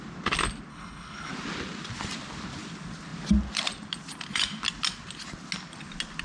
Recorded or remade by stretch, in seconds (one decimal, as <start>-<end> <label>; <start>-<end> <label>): 0.0-0.7 recorded; 0.7-1.3 remade; 1.3-6.2 recorded